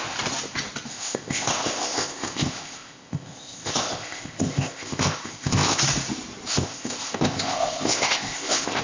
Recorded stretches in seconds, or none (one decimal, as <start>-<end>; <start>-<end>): 0.0-0.9; 5.8-6.5